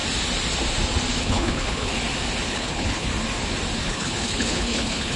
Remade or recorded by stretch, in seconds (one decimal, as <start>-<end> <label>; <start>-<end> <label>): 0.0-1.2 recorded; 1.2-1.9 remade; 1.9-2.5 recorded; 2.5-3.1 remade; 3.1-3.8 recorded; 3.8-5.2 remade